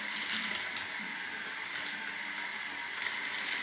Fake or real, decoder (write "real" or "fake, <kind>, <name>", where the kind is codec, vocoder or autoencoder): real